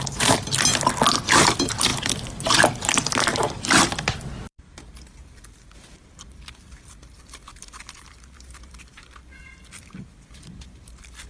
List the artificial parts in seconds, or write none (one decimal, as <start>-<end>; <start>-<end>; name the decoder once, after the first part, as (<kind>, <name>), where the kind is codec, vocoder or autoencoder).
0.0-0.7 (vocoder, BigVGAN v2); 1.2-11.3